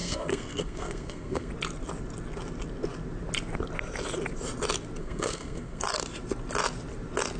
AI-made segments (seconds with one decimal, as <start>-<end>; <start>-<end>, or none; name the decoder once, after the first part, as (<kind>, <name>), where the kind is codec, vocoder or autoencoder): 0.0-1.5 (codec, SNAC); 5.0-5.8